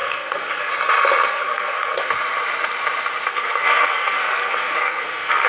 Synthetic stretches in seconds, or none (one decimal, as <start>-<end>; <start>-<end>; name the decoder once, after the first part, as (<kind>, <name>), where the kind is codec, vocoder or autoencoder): 0.0-0.7 (codec, SNAC); 1.3-2.1; 3.3-5.5